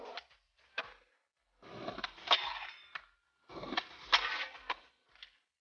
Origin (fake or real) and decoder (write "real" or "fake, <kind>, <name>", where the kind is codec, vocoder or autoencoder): real